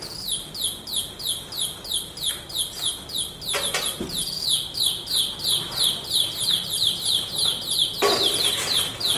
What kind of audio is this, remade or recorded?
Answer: recorded